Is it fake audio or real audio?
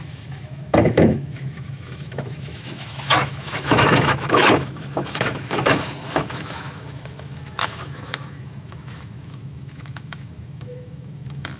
fake